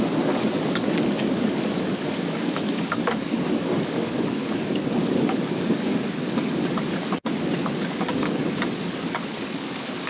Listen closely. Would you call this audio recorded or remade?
remade